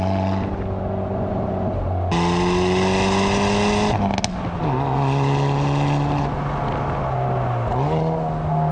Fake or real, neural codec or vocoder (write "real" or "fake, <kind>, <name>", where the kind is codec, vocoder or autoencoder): real